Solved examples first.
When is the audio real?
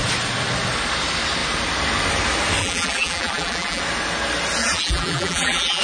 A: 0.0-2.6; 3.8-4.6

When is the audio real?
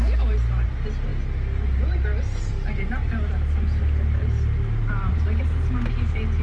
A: 0.0-6.4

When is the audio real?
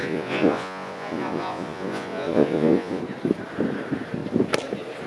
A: 3.0-5.1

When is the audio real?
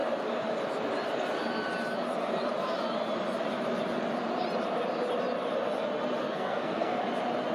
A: 0.0-6.2; 7.0-7.5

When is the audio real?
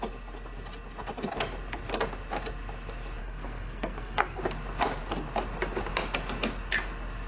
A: 0.0-3.2; 4.4-7.3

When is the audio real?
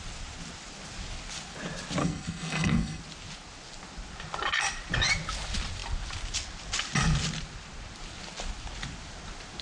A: 0.0-2.0; 3.0-9.6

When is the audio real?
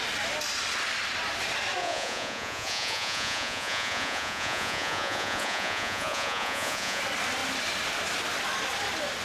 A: 0.0-1.8; 7.0-9.2